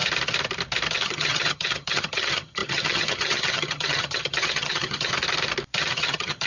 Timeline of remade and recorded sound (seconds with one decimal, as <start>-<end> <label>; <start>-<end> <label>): 0.0-0.9 recorded; 0.9-5.1 remade; 5.1-5.8 recorded; 5.8-6.5 remade